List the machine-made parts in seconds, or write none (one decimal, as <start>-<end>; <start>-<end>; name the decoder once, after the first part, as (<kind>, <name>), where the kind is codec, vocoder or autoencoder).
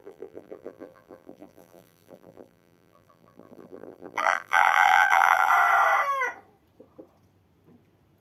0.0-5.5 (vocoder, BigVGAN v2)